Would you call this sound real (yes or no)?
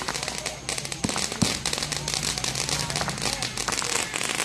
yes